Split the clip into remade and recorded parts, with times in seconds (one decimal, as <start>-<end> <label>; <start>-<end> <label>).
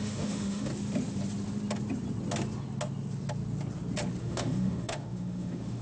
0.0-0.7 remade; 0.7-4.2 recorded; 4.2-5.8 remade